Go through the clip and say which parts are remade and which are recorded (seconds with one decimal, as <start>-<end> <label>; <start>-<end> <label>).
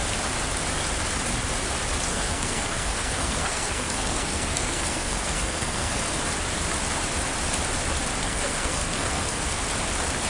0.0-2.1 recorded; 2.1-6.2 remade; 6.2-8.2 recorded; 8.2-9.6 remade; 9.6-10.3 recorded